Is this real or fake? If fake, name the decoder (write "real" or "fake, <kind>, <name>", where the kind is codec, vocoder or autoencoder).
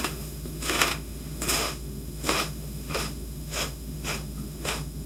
fake, autoencoder, DAC-VAE